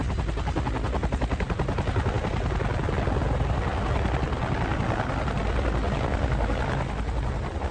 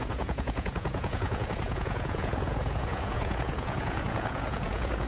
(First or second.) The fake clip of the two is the second